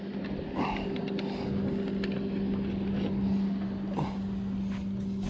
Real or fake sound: real